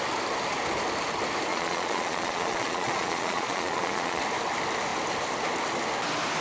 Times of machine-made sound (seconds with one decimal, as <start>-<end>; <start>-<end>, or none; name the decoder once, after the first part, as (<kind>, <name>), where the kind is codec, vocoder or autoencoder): 1.5-4.2 (vocoder, Vocos)